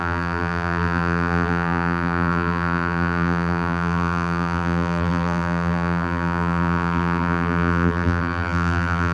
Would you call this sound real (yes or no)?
no